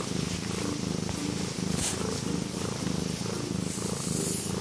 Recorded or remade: recorded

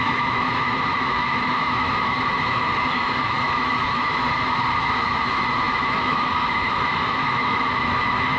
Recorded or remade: remade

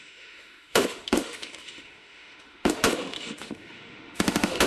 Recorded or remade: remade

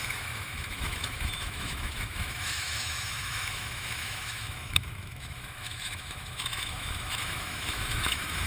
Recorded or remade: remade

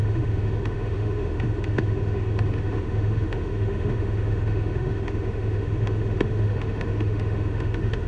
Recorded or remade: remade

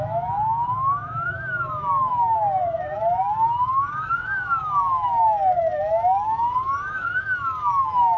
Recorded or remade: remade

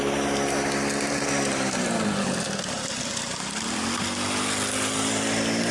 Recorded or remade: recorded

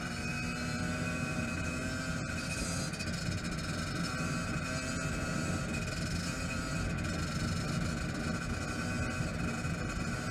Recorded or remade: recorded